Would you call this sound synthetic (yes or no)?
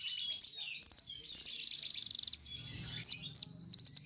no